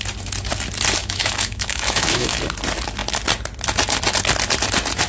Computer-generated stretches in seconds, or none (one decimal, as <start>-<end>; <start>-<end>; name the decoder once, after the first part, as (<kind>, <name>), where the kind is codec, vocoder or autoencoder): 1.0-2.4 (autoencoder, DAC-VAE)